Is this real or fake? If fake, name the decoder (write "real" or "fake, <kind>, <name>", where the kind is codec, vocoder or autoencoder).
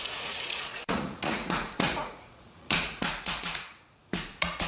fake, vocoder, Vocos